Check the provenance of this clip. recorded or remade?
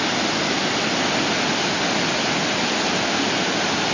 recorded